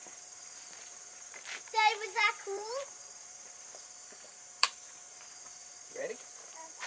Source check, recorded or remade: remade